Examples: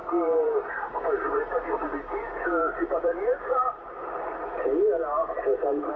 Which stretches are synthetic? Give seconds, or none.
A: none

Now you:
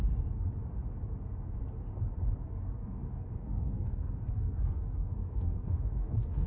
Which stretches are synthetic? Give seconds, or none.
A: 2.5-6.5 (codec, SNAC)

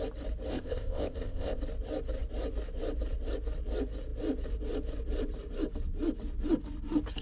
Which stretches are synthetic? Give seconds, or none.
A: 0.5-1.6 (codec, ZipCodec)

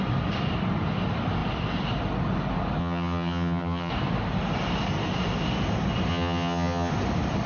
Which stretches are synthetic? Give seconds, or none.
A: 2.8-3.9 (vocoder, HiFi-GAN); 6.1-6.9

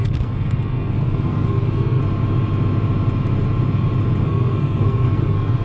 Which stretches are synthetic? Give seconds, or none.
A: 0.0-2.0 (codec, SNAC); 4.2-5.6

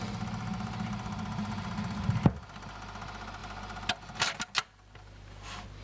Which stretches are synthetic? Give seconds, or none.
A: none

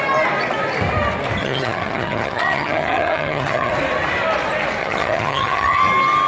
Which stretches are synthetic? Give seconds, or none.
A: 1.4-3.7 (vocoder, HiFi-GAN); 4.8-5.8